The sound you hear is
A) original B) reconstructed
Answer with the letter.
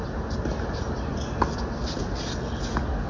A